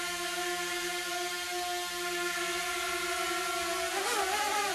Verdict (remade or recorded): recorded